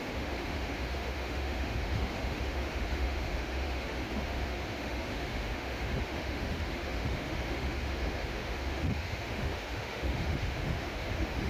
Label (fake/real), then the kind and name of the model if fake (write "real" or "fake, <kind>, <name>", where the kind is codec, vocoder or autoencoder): fake, autoencoder, DAC-VAE